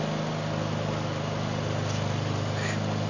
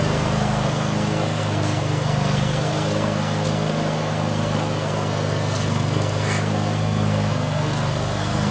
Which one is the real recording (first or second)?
first